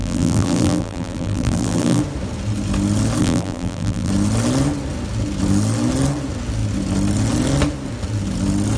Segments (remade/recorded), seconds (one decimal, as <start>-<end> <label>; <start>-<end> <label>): 0.0-2.0 remade; 2.0-3.2 recorded; 3.2-4.1 remade; 4.1-8.8 recorded